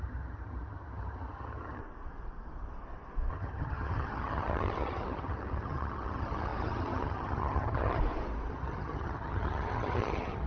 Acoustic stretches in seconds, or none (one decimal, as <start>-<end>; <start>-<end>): 1.8-3.3; 8.0-8.5